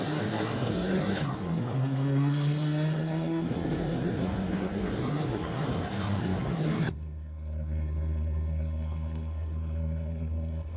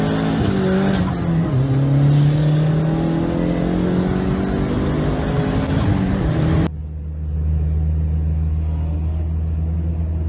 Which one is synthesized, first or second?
first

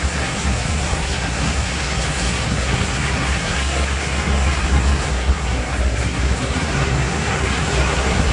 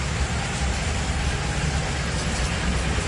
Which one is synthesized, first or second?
first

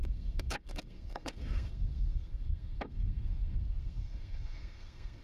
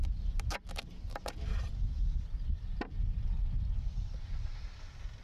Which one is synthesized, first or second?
first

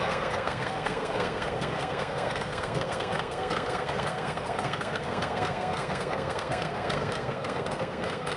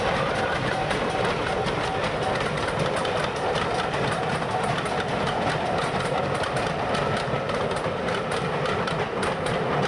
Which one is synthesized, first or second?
first